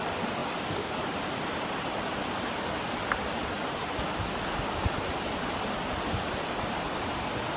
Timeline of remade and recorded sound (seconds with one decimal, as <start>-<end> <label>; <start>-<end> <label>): 0.0-7.6 recorded